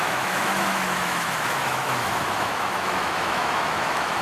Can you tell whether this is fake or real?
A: fake